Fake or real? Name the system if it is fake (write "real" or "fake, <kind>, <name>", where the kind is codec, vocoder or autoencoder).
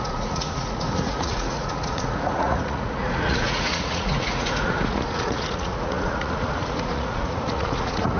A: fake, vocoder, Vocos